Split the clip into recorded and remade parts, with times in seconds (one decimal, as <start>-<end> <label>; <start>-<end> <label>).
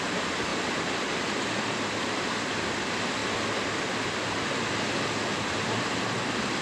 0.0-0.5 remade; 0.5-2.5 recorded; 2.5-3.2 remade; 3.2-5.5 recorded; 5.5-6.6 remade